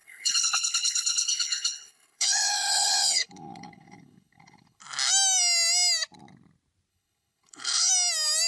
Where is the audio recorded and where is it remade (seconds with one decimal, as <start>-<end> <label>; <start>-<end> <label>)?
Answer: 0.0-4.8 remade; 4.8-6.9 recorded; 6.9-7.9 remade; 7.9-8.5 recorded